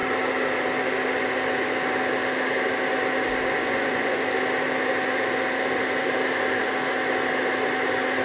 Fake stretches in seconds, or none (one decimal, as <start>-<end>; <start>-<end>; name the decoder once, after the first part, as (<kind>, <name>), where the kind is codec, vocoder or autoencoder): 3.6-4.2 (vocoder, Vocos)